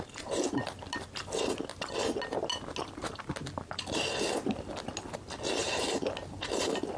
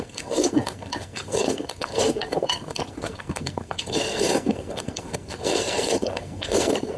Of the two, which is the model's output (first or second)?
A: second